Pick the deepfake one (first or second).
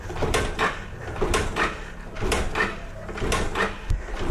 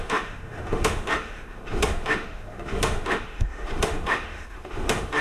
second